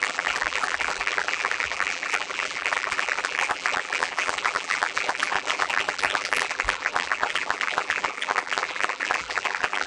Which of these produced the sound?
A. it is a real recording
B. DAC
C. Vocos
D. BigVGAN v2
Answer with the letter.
D